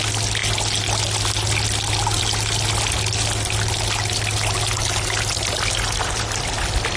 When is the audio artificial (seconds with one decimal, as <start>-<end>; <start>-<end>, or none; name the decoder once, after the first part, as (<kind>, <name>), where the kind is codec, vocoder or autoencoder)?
none